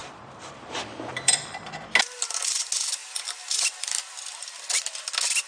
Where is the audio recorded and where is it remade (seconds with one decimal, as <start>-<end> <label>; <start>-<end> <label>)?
0.0-1.8 remade; 1.8-5.5 recorded